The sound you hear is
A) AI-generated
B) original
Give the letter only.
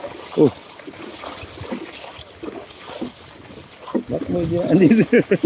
B